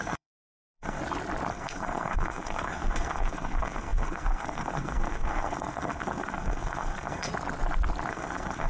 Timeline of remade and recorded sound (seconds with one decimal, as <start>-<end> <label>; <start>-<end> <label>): 0.0-1.0 remade; 1.0-1.5 recorded; 1.5-7.3 remade; 7.3-8.1 recorded; 8.1-8.7 remade